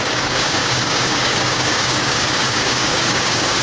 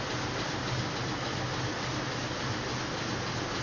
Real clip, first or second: second